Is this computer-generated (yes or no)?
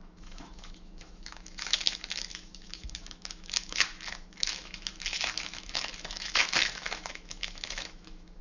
yes